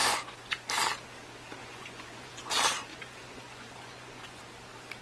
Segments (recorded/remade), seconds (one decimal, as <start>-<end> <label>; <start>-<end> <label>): 0.0-0.7 remade; 0.7-1.6 recorded; 1.6-2.5 remade; 2.5-2.9 recorded; 2.9-4.4 remade; 4.4-5.0 recorded